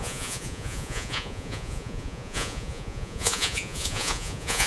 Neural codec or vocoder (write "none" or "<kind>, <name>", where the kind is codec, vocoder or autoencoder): vocoder, Vocos